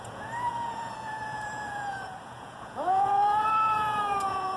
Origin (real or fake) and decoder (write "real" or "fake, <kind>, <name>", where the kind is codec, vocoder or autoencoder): fake, vocoder, Vocos